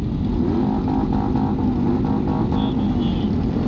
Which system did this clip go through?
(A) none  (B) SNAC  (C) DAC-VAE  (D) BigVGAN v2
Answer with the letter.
A